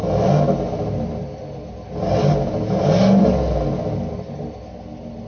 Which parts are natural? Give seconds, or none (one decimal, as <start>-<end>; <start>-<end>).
0.0-5.3